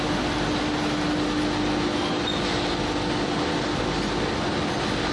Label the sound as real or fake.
real